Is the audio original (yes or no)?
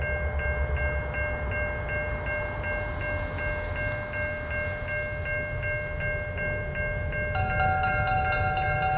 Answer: yes